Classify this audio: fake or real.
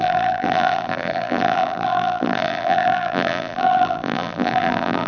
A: fake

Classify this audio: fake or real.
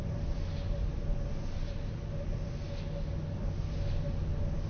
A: real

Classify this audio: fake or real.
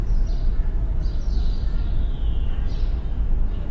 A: real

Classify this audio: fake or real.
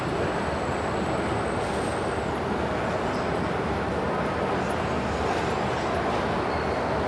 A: real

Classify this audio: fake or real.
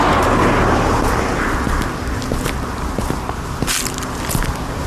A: real